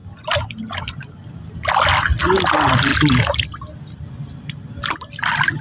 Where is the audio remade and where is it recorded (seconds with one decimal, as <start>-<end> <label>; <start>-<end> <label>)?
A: 0.0-5.6 recorded